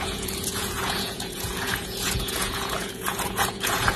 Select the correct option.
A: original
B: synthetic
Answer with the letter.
B